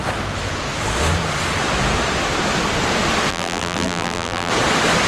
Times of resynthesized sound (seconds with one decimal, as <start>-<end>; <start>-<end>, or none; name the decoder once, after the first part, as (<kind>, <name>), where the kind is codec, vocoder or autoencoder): 3.3-4.5 (vocoder, BigVGAN v2)